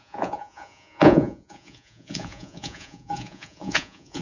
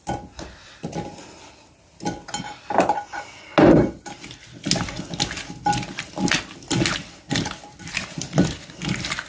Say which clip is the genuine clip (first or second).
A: second